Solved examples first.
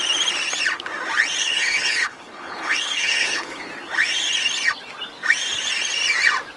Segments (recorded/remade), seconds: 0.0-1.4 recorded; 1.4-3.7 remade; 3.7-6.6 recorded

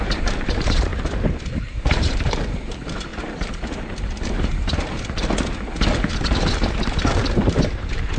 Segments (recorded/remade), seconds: 0.0-0.9 remade; 0.9-1.4 recorded; 1.4-3.1 remade; 3.1-6.5 recorded; 6.5-8.2 remade

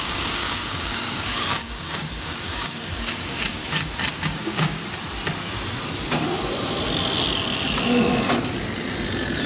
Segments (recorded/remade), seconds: 0.0-3.6 remade; 3.6-4.1 recorded; 4.1-4.8 remade; 4.8-9.5 recorded